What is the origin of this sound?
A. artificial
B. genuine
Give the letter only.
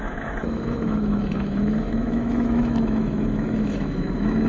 A